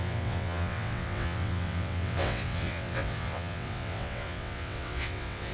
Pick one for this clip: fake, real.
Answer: fake